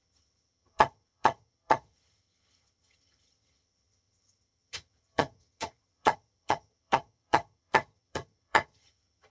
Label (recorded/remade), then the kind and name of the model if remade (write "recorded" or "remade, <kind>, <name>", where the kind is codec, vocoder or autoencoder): remade, vocoder, HiFi-GAN